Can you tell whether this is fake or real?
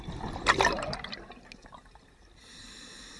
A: real